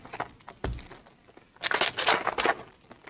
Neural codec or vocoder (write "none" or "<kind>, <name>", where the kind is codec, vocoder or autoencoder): none